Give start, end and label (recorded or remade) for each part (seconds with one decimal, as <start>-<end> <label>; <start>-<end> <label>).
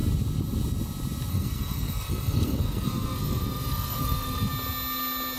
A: 0.0-1.3 recorded; 1.3-4.5 remade; 4.5-5.4 recorded